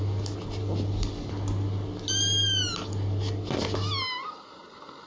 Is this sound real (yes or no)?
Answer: yes